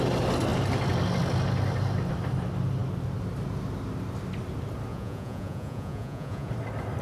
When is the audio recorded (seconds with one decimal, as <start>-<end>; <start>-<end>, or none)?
0.0-4.9; 6.5-7.0

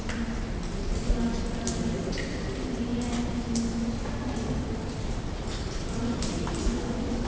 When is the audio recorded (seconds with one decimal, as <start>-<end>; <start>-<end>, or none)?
0.0-7.3

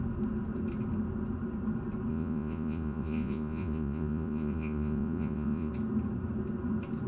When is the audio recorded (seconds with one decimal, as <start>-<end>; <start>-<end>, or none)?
0.0-2.1; 5.7-7.1

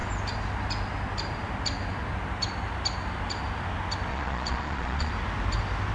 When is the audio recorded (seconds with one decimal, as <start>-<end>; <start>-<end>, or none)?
0.0-4.1; 5.1-5.9

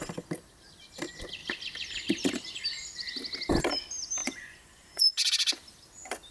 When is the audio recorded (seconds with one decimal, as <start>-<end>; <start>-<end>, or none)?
0.0-4.2; 5.1-6.3

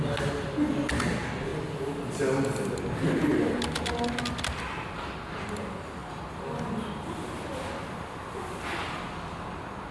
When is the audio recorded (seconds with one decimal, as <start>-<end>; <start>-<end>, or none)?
0.0-9.9

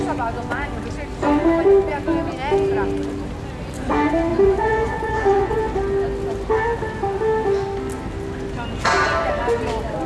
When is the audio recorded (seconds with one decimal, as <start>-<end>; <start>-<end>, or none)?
0.0-4.3; 5.6-10.1

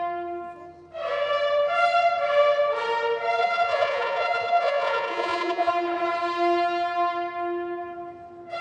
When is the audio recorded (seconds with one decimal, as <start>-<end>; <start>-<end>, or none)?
0.0-3.4; 5.7-8.6